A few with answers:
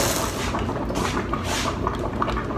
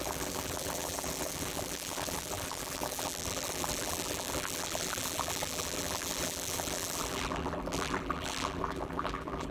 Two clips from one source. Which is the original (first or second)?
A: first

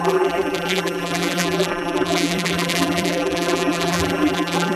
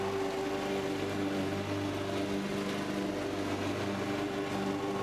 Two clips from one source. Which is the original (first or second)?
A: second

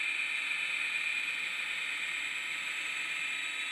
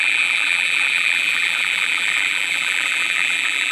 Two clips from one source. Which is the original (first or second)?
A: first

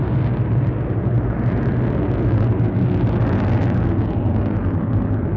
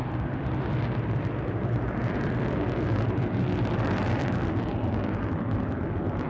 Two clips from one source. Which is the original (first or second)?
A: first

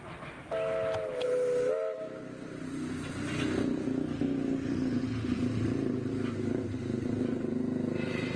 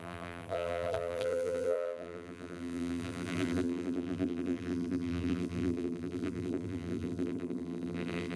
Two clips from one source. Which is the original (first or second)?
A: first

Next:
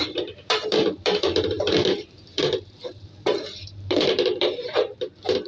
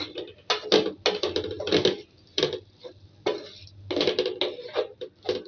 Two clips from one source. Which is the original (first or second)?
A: second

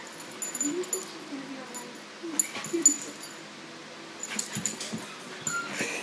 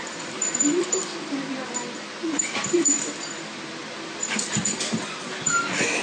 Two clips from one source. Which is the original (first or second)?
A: first